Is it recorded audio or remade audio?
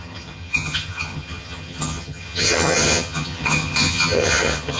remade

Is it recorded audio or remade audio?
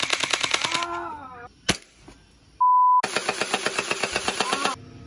recorded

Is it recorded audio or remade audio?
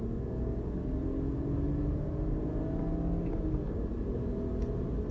recorded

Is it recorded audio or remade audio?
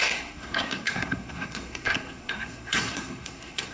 remade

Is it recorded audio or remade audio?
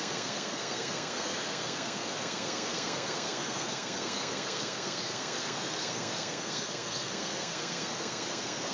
remade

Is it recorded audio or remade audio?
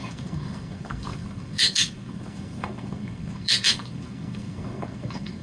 remade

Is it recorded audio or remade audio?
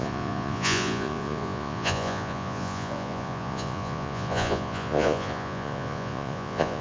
remade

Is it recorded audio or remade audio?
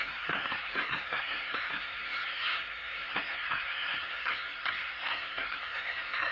remade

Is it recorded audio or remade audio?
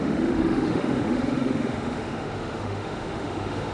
remade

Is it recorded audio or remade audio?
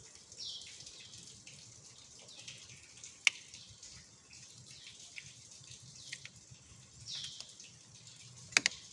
recorded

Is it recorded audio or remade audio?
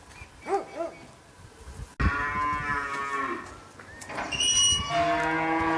recorded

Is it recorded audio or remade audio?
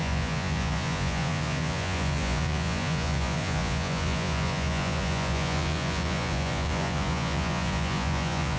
remade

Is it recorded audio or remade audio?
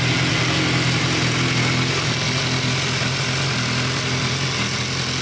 recorded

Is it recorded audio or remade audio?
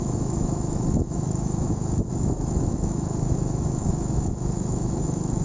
remade